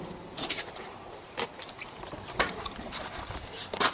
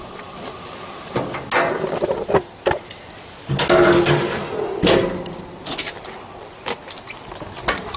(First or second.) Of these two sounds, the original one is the second